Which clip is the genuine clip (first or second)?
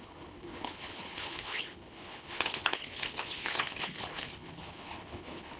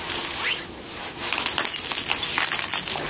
second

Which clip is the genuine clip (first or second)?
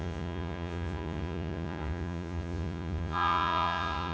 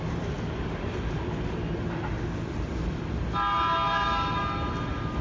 second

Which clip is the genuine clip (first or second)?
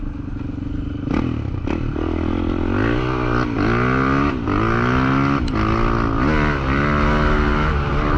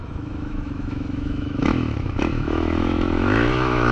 first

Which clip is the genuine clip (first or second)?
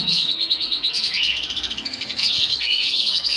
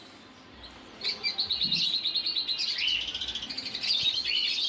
second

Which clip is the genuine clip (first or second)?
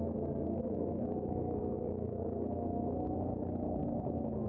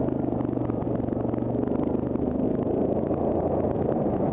second